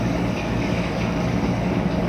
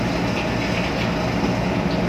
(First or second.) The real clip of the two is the second